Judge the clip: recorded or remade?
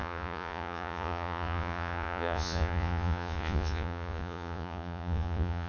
remade